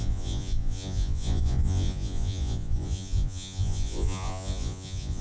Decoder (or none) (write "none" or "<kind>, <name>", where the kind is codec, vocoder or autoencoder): vocoder, Vocos